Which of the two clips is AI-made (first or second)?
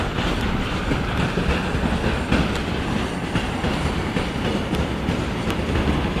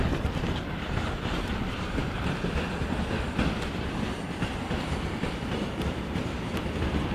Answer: second